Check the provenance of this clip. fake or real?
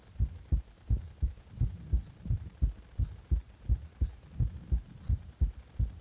real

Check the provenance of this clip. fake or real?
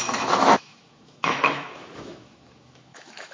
fake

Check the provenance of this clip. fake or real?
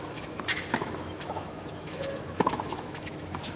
fake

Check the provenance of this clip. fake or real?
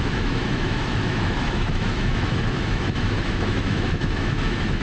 fake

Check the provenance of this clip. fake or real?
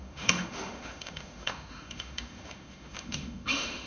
fake